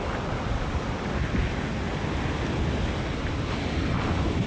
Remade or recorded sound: recorded